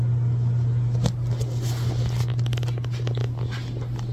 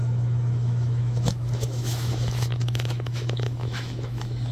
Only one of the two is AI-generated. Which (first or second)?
second